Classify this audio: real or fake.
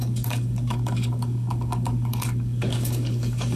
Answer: fake